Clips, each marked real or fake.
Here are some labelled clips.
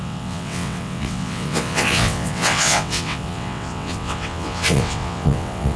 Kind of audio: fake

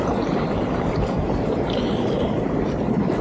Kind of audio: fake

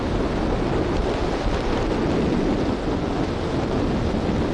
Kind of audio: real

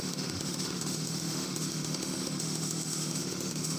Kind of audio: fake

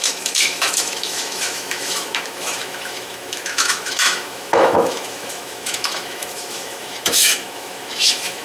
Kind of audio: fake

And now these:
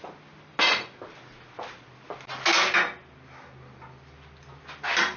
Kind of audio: real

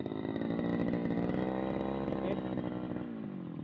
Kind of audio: real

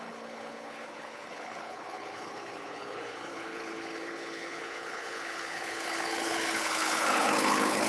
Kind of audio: fake